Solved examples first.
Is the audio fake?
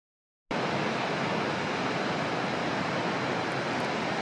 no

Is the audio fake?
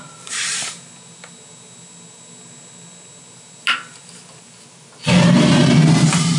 no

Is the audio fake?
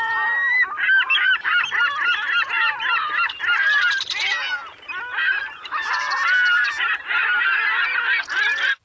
yes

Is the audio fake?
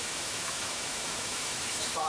yes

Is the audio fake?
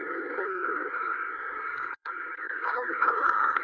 yes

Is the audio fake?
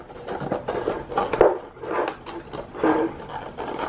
no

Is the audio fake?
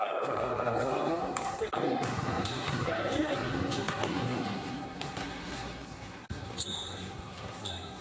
yes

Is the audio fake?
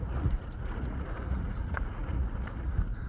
yes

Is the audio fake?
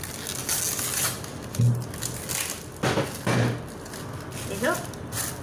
no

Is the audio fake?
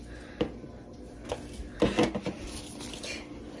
no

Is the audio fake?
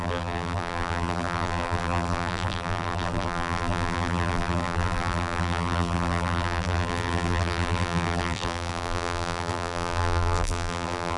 yes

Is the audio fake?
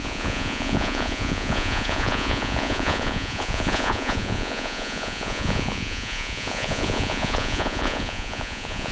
yes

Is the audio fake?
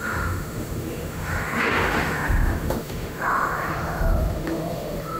yes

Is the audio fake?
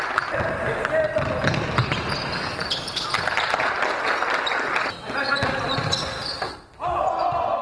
no